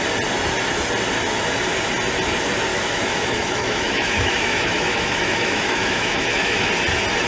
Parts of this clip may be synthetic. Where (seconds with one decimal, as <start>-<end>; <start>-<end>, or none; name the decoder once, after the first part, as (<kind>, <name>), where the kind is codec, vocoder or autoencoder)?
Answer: 2.7-6.7 (autoencoder, DAC-VAE)